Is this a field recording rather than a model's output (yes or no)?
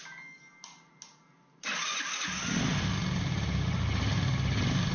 yes